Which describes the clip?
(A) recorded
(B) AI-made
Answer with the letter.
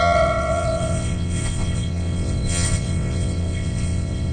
B